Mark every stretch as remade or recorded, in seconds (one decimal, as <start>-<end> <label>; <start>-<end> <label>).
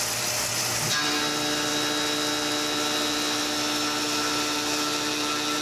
0.0-5.6 recorded